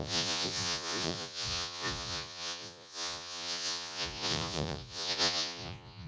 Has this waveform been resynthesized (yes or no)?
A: yes